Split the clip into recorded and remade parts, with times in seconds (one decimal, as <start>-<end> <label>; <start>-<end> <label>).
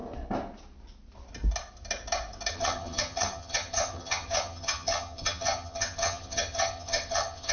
0.0-2.5 recorded; 2.5-7.5 remade